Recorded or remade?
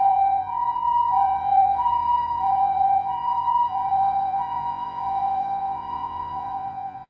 remade